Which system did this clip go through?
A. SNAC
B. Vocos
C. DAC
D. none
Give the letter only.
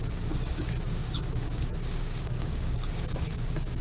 C